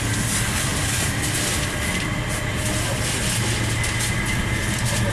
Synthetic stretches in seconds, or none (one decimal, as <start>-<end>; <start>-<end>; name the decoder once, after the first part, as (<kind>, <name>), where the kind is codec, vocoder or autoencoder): 0.7-3.3 (vocoder, BigVGAN v2)